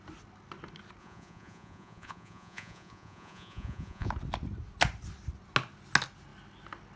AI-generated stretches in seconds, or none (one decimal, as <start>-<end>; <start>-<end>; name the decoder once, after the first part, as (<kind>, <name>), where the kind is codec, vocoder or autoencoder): 1.0-4.1 (vocoder, Vocos)